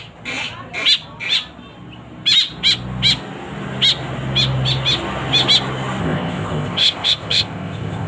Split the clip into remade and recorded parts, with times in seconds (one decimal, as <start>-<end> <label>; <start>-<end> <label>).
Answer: 0.0-6.0 recorded; 6.0-8.1 remade